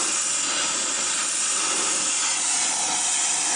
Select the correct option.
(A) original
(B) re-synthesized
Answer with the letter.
A